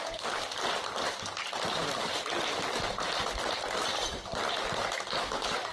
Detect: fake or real real